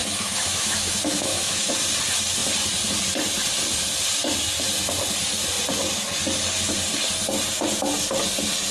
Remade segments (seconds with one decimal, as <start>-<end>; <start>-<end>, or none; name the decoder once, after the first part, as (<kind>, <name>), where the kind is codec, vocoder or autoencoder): 0.0-1.7 (autoencoder, DAC-VAE)